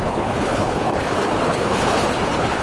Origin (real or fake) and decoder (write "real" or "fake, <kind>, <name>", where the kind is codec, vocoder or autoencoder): fake, codec, HILCodec